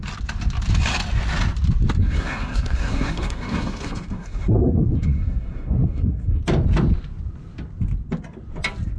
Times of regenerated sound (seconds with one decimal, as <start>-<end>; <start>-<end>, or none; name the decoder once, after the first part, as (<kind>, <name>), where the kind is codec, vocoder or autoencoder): 2.0-6.4 (codec, SNAC)